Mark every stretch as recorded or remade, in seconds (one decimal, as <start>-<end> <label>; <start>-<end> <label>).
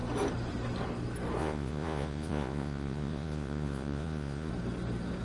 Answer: 0.0-1.4 recorded; 1.4-4.5 remade; 4.5-5.2 recorded